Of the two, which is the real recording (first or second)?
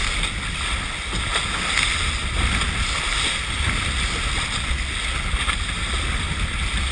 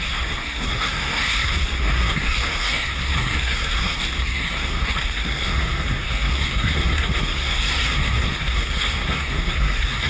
first